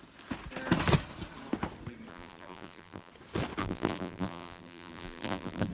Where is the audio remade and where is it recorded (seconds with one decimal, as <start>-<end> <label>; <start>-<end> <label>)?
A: 0.0-2.1 recorded; 2.1-3.1 remade; 3.1-3.6 recorded; 3.6-5.7 remade